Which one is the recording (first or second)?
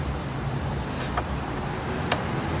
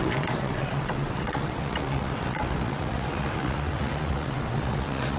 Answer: first